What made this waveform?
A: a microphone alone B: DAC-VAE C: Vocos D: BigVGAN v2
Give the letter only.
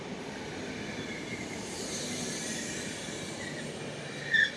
A